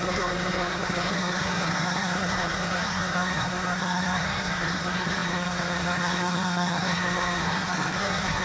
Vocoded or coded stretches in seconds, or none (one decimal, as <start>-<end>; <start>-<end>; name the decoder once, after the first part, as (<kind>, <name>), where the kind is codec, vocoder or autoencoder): 0.0-8.4 (codec, SNAC)